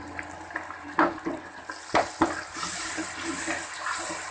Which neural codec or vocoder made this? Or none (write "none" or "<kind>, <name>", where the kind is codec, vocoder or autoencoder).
none